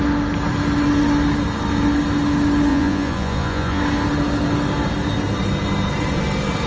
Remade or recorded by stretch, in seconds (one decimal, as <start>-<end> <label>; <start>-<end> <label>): 0.0-2.7 recorded; 2.7-3.8 remade; 3.8-6.7 recorded